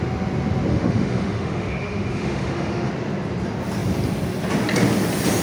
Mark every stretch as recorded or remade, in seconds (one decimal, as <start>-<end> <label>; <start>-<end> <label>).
0.0-0.7 recorded; 0.7-2.9 remade; 2.9-5.4 recorded